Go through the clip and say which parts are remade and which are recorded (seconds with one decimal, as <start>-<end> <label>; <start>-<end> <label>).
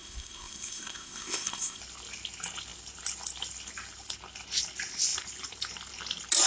0.0-1.8 remade; 1.8-6.5 recorded